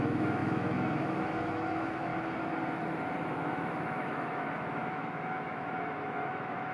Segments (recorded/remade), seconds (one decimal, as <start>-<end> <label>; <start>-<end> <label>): 0.0-2.1 remade; 2.1-3.3 recorded; 3.3-6.7 remade

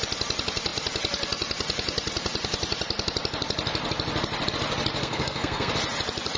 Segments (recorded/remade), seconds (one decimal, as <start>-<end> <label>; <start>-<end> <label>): 0.0-5.0 recorded; 5.0-5.7 remade; 5.7-6.4 recorded

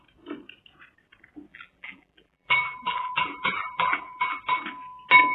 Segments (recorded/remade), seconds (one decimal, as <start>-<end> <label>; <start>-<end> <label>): 0.0-1.5 recorded; 1.5-4.4 remade; 4.4-5.3 recorded

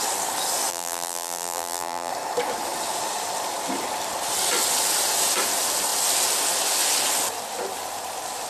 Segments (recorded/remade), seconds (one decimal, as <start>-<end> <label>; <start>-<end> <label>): 0.0-0.7 recorded; 0.7-2.1 remade; 2.1-8.5 recorded